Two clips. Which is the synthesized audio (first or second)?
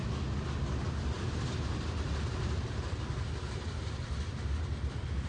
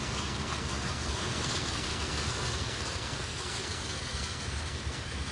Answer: second